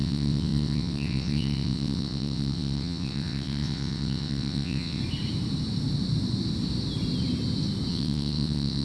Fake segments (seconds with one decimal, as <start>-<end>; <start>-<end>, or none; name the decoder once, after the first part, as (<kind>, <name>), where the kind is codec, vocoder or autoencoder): 0.0-5.0 (vocoder, WaveNeXt); 7.9-8.8